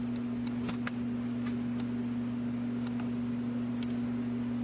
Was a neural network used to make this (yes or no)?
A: no